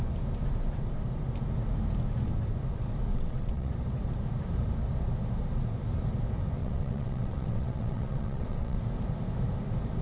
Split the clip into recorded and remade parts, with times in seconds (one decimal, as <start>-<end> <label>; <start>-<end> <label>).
0.0-3.1 recorded; 3.1-3.7 remade; 3.7-6.6 recorded; 6.6-8.8 remade; 8.8-10.0 recorded